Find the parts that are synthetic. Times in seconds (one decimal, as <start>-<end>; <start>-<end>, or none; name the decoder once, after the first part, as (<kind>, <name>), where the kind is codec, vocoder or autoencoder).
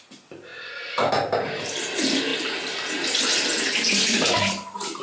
none